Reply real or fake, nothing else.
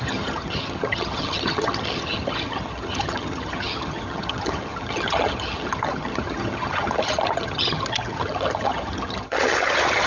fake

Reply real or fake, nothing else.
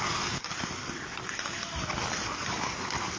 real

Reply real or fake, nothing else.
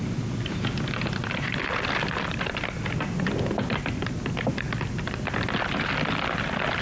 fake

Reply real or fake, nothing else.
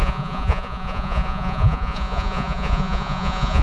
fake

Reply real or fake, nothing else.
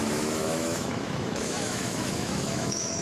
fake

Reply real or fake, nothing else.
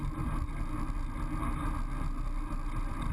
real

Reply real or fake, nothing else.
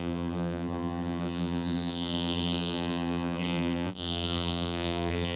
fake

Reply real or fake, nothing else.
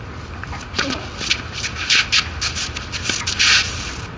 real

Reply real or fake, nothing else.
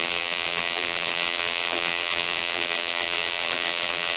fake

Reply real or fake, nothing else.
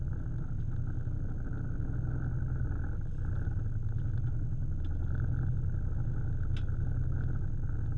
real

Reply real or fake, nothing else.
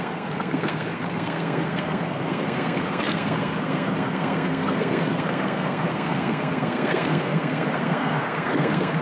fake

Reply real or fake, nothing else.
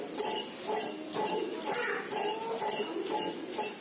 real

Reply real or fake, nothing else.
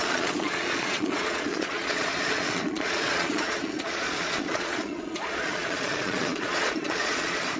fake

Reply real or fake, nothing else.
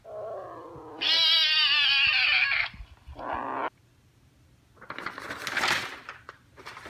real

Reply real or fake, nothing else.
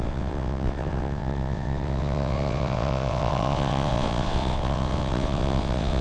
fake